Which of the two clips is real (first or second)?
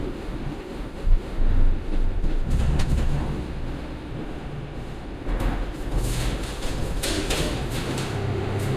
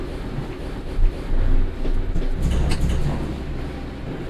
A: second